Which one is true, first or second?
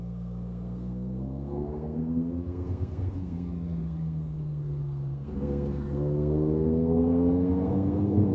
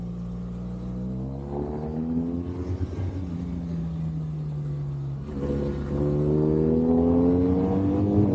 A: second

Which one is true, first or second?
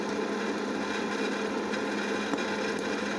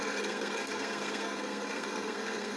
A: first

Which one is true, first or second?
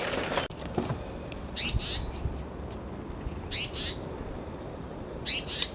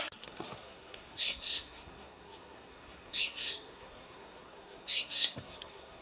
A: first